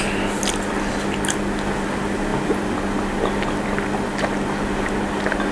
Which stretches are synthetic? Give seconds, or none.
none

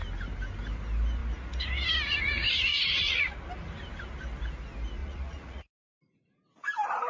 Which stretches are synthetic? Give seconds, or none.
2.7-3.5 (vocoder, Vocos); 5.0-5.9

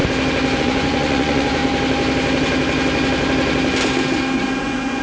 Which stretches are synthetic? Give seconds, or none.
0.6-1.6 (vocoder, Vocos); 4.6-5.0

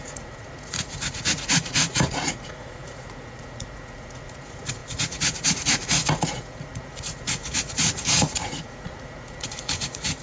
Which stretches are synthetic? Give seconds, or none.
0.0-10.2 (vocoder, Vocos)